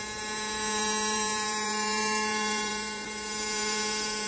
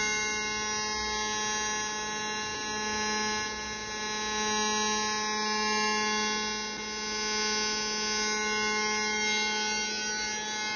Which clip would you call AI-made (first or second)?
first